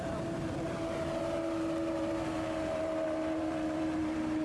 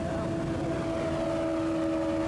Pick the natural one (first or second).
second